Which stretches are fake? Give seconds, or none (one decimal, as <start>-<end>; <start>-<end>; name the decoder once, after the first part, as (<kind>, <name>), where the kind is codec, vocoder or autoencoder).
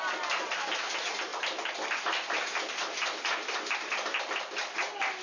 none